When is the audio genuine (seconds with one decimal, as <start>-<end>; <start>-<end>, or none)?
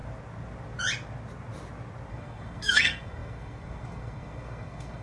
0.0-2.1